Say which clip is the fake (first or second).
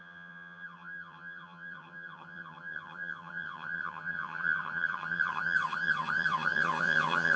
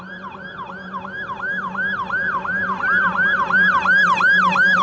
first